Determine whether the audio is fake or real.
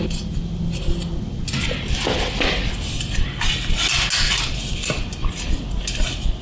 real